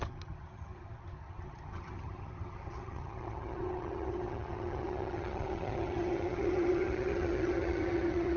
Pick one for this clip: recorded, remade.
remade